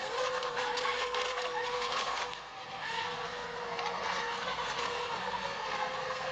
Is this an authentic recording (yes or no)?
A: no